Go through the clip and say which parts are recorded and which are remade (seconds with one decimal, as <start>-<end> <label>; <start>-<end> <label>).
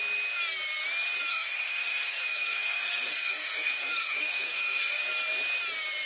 0.0-1.3 recorded; 1.3-5.0 remade; 5.0-6.1 recorded